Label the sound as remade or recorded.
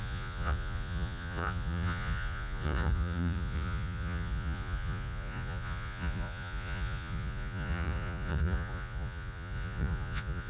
remade